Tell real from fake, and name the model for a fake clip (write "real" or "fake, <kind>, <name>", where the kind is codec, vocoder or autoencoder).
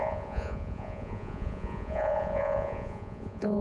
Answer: fake, vocoder, Vocos